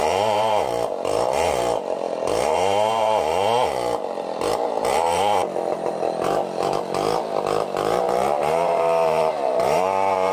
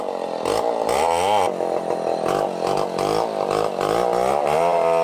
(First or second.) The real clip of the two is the second